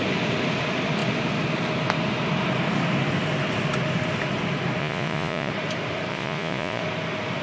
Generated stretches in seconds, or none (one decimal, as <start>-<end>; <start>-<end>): 4.8-5.5; 6.1-6.8